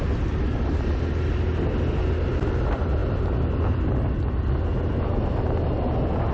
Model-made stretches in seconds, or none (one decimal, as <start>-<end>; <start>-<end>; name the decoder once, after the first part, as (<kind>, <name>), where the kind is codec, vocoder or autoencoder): none